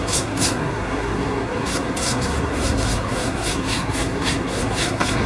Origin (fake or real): fake